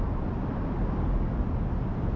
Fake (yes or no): no